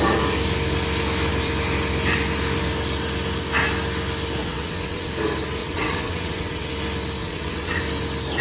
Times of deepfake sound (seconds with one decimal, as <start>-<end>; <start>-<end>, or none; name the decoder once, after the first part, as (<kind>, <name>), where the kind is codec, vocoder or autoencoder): 4.4-5.1 (vocoder, WaveNeXt); 5.6-6.7; 7.2-7.8